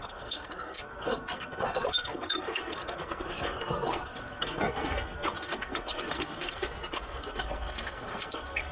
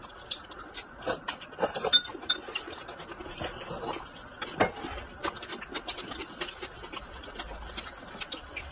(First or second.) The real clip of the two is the second